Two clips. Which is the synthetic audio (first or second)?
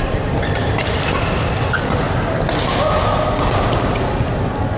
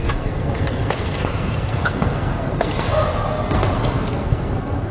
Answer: second